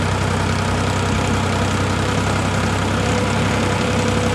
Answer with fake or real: real